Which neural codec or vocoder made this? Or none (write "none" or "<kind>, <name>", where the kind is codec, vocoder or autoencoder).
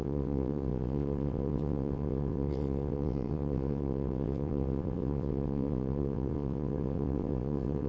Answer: vocoder, WaveNeXt